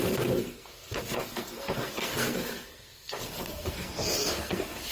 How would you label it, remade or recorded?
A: remade